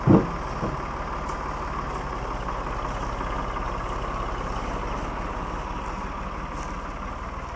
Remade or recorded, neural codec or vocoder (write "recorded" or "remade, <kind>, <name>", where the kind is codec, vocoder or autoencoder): recorded